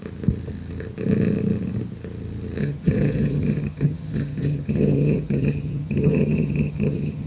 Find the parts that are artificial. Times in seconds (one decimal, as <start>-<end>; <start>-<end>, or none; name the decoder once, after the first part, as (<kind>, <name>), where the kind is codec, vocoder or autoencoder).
2.6-7.3 (vocoder, HiFi-GAN)

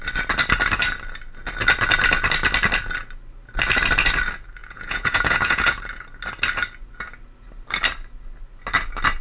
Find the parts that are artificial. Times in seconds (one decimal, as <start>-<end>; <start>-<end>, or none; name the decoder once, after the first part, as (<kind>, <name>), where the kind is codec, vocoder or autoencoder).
4.6-5.8 (vocoder, Vocos)

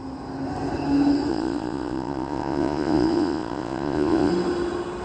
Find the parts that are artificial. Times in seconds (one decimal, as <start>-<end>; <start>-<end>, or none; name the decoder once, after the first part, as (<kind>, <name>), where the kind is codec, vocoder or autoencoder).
1.3-4.3 (vocoder, Vocos)